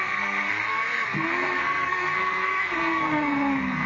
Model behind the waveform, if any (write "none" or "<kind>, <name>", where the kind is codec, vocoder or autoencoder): codec, SNAC